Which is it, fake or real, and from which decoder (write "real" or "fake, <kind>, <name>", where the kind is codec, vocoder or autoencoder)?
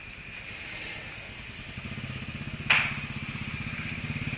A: real